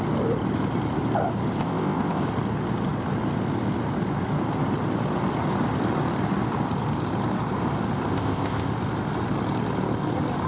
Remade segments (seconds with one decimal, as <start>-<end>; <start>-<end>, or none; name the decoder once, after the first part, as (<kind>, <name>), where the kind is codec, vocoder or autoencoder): 1.6-2.2 (codec, ZipCodec); 8.1-8.7